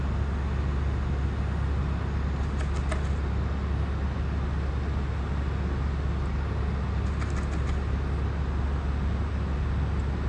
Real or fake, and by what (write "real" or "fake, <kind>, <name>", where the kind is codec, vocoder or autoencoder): real